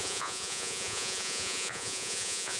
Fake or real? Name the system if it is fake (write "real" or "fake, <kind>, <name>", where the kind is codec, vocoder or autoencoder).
fake, vocoder, Vocos